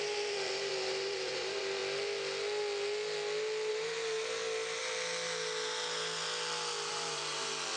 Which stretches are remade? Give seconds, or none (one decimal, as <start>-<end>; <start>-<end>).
0.0-1.8; 3.7-4.4; 6.9-7.8

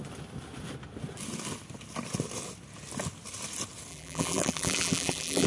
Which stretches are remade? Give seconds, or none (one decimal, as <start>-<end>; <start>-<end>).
3.9-5.5

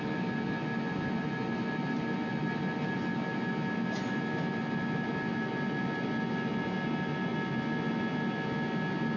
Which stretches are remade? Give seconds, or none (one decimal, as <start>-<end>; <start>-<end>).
none

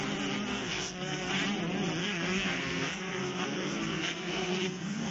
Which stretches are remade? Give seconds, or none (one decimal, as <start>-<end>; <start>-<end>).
0.5-1.3; 2.0-5.1

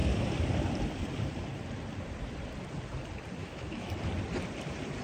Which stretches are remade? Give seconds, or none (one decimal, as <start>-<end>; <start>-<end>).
3.4-4.0

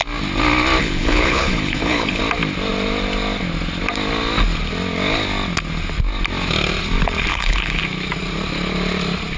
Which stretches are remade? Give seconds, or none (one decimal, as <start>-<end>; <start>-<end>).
0.8-2.2; 7.3-7.8